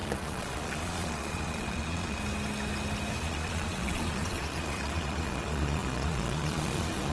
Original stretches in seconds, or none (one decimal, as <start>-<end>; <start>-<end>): 2.2-3.2